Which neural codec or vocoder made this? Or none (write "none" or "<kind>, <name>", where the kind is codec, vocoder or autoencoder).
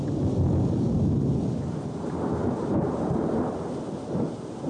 none